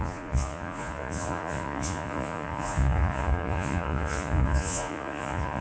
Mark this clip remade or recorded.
remade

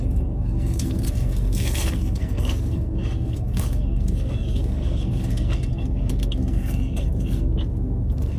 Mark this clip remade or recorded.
remade